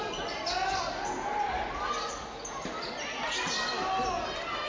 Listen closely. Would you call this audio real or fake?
real